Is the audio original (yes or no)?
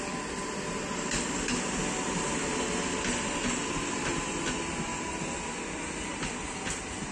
yes